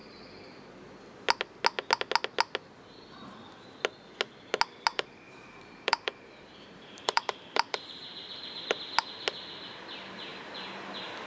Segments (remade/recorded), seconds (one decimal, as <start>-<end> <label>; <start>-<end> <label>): 0.0-4.9 recorded; 4.9-8.6 remade; 8.6-10.3 recorded; 10.3-10.9 remade; 10.9-11.3 recorded